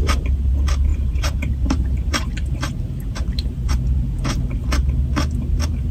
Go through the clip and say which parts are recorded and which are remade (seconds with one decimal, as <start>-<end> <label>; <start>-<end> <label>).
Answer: 0.0-0.5 remade; 0.5-0.9 recorded; 0.9-4.4 remade; 4.4-5.9 recorded